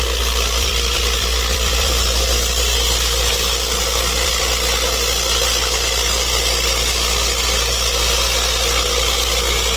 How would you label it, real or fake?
fake